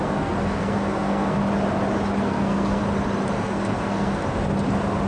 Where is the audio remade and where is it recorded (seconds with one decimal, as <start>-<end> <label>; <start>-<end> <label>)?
0.0-1.4 remade; 1.4-2.2 recorded; 2.2-2.8 remade; 2.8-3.4 recorded; 3.4-4.2 remade; 4.2-5.1 recorded

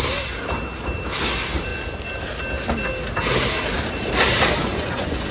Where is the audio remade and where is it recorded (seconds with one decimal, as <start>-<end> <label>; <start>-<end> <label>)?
0.0-4.6 recorded; 4.6-5.3 remade

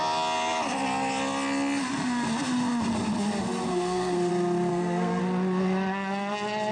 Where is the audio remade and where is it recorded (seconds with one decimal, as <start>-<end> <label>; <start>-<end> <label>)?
0.0-3.7 recorded; 3.7-4.3 remade; 4.3-4.7 recorded; 4.7-5.2 remade; 5.2-6.7 recorded

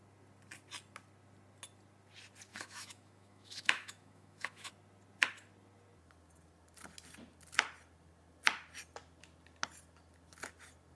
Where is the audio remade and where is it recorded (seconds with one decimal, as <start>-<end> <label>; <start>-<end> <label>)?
0.0-2.5 recorded; 2.5-4.7 remade; 4.7-11.0 recorded

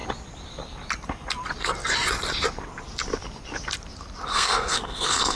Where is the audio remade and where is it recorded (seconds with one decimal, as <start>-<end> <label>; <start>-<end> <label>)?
0.0-4.3 recorded; 4.3-5.4 remade